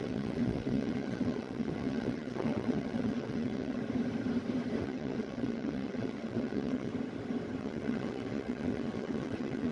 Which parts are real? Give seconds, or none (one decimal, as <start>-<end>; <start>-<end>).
3.8-4.8; 6.9-7.6